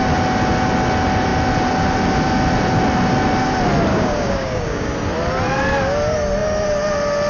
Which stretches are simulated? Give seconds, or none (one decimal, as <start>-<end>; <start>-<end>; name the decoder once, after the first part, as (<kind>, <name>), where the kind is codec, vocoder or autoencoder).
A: 3.9-4.9 (codec, DAC)